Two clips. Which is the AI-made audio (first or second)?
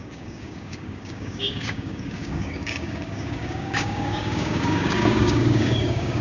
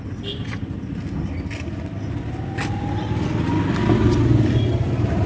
first